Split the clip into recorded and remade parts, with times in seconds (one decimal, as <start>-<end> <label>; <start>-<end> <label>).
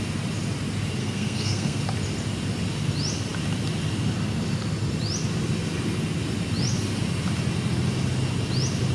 0.0-1.0 recorded; 1.0-1.8 remade; 1.8-8.9 recorded